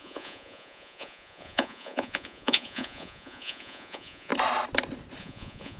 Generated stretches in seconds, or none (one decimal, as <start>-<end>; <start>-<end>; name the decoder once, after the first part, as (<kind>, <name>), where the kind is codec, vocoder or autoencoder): 0.0-4.3 (vocoder, Vocos); 5.2-5.8